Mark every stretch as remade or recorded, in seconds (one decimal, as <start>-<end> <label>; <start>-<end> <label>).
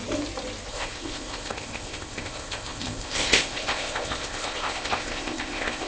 0.0-0.7 recorded; 0.7-5.9 remade